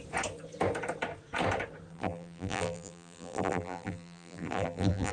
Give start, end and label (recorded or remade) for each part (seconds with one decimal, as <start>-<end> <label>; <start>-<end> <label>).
0.0-1.9 recorded; 1.9-5.1 remade